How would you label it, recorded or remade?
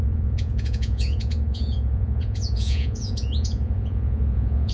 remade